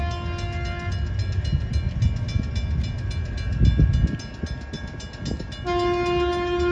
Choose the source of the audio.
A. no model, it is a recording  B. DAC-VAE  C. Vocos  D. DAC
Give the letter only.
A